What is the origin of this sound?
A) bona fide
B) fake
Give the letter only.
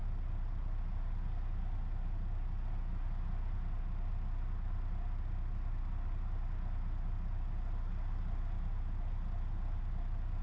A